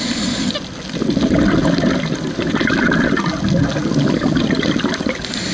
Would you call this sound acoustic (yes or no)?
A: yes